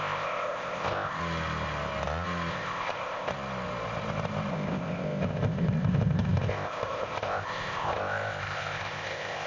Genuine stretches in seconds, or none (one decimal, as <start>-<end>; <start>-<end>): 1.2-2.5; 3.3-4.5